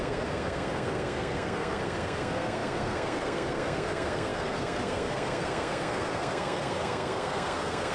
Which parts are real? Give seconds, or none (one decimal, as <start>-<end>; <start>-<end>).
none